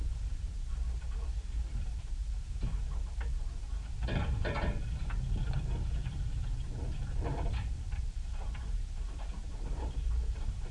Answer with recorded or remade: remade